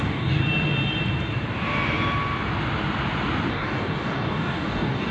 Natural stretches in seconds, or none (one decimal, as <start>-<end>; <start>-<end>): 0.4-3.5